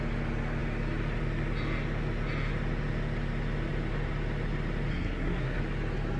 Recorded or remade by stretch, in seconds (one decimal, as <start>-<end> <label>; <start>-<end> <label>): 0.0-4.9 recorded; 4.9-5.6 remade; 5.6-6.2 recorded